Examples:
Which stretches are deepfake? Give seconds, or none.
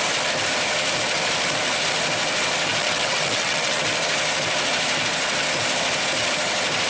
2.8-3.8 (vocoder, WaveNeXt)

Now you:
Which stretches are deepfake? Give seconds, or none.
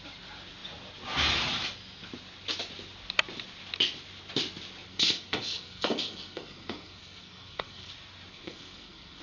4.9-7.9 (codec, SNAC); 8.3-9.2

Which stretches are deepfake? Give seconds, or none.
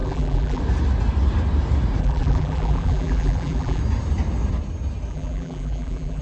0.0-0.6 (vocoder, BigVGAN v2); 2.0-3.8; 5.1-6.2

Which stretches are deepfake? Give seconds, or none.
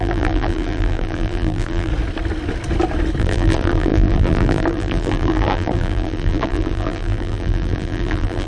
0.0-1.9 (vocoder, BigVGAN v2); 3.2-8.5